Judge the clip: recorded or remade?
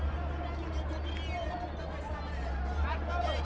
recorded